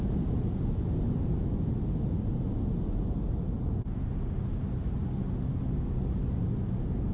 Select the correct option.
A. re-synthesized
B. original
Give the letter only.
B